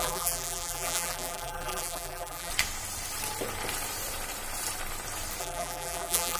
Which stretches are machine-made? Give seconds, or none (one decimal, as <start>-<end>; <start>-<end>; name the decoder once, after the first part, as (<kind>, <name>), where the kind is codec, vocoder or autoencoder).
0.0-2.5 (vocoder, BigVGAN v2); 5.4-6.4